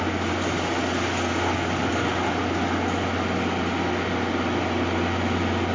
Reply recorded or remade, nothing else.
recorded